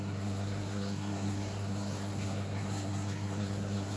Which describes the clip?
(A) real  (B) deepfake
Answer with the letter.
B